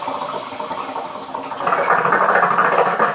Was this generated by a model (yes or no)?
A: no